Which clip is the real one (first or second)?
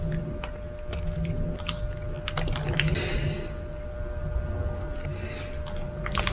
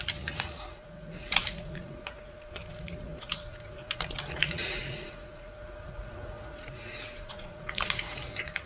first